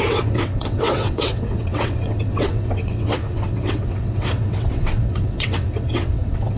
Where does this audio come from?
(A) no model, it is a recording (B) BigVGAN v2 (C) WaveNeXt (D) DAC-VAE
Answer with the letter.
C